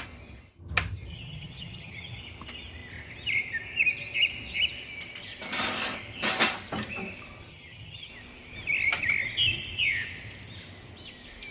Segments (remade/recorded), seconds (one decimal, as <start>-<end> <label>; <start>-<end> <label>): 0.0-1.1 recorded; 1.1-2.2 remade; 2.2-7.5 recorded; 7.5-8.1 remade; 8.1-11.5 recorded